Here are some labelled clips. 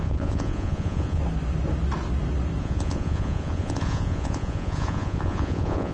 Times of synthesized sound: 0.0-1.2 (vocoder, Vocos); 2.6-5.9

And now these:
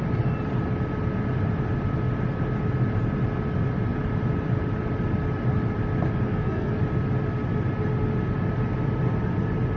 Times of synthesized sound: 6.3-6.8 (codec, SNAC)

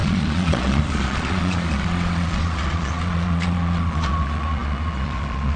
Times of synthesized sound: 0.0-5.6 (vocoder, Vocos)

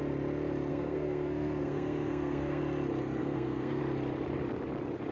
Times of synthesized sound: 0.7-2.6 (codec, SNAC); 3.2-3.8

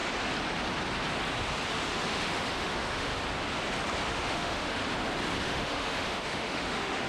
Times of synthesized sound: 1.7-3.1 (autoencoder, DAC-VAE); 4.1-4.8; 5.4-7.1